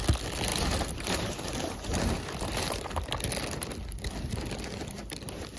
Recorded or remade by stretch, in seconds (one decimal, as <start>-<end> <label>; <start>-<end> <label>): 0.0-0.5 recorded; 0.5-2.9 remade; 2.9-5.6 recorded